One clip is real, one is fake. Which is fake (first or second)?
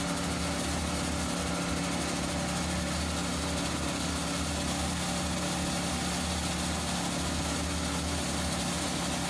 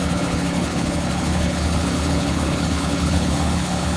second